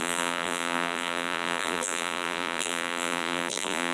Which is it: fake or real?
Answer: fake